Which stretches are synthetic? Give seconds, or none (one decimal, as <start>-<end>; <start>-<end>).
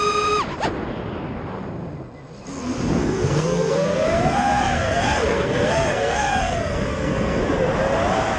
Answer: 3.0-7.4